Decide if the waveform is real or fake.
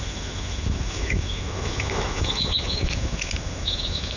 fake